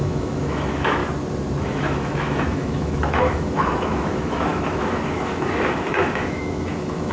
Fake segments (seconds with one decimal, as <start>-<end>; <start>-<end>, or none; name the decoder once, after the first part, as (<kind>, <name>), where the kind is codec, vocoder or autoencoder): 0.0-1.0 (autoencoder, DAC-VAE); 1.6-7.1